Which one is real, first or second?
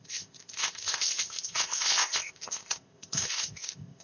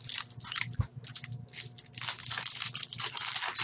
second